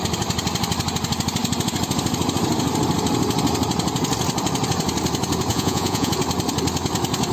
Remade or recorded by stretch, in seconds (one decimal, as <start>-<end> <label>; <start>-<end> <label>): 0.0-5.5 recorded; 5.5-6.1 remade; 6.1-7.3 recorded